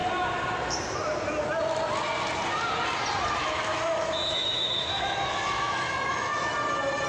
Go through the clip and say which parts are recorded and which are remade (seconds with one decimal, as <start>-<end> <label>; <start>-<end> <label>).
0.0-3.4 recorded; 3.4-6.5 remade; 6.5-7.1 recorded